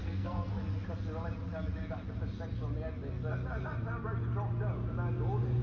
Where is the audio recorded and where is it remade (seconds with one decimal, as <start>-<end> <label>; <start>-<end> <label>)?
0.0-0.6 remade; 0.6-5.6 recorded